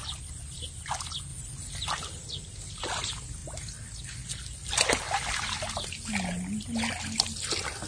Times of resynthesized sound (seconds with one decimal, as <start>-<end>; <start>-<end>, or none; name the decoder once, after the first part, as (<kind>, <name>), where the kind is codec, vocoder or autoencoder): none

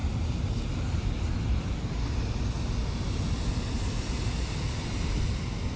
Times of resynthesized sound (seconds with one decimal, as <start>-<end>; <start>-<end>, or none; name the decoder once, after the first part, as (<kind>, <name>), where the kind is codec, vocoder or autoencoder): none

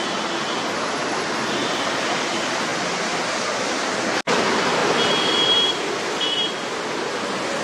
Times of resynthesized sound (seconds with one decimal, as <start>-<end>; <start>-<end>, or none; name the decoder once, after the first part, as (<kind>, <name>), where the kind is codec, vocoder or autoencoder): 4.8-7.1 (vocoder, BigVGAN v2)

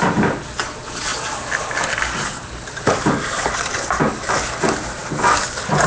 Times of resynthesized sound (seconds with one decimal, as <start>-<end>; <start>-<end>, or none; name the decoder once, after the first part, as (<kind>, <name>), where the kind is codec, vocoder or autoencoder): none